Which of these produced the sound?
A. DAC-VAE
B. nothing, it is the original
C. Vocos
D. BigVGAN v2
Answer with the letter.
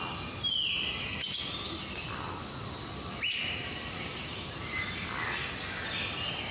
B